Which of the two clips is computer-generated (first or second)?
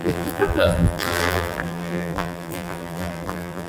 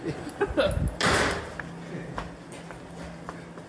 first